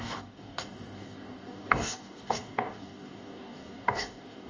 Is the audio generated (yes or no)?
yes